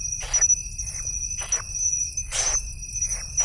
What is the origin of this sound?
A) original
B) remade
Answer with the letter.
A